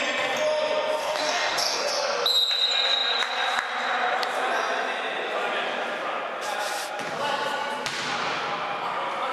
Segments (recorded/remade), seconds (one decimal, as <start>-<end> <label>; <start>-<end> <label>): 0.0-1.0 recorded; 1.0-1.9 remade; 1.9-9.3 recorded